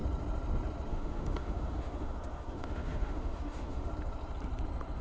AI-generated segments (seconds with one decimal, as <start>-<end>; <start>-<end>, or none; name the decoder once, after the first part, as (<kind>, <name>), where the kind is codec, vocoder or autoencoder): 0.9-3.9 (autoencoder, DAC-VAE)